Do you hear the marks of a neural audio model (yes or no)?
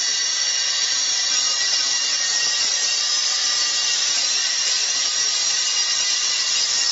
yes